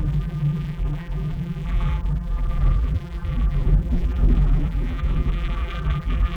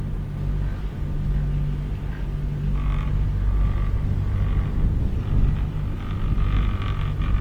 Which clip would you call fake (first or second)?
first